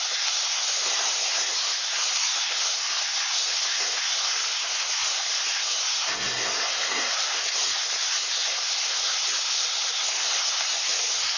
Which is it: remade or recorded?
remade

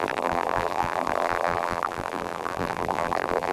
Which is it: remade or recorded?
remade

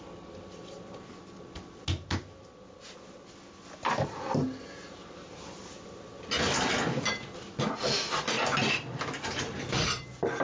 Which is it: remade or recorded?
recorded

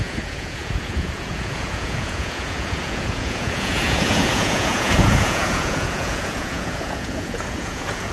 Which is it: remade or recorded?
remade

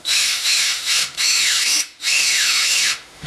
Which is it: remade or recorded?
remade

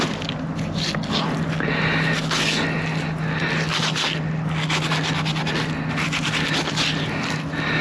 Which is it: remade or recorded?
recorded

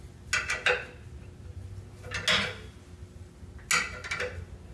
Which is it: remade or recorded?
recorded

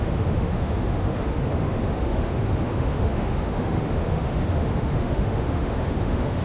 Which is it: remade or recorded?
remade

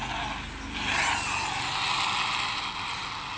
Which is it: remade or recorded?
recorded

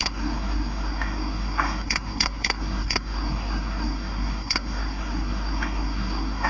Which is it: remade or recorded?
remade